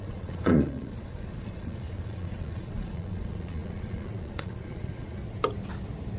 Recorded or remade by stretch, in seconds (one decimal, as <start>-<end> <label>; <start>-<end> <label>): 0.0-5.2 remade; 5.2-6.2 recorded